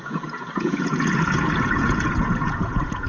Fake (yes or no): yes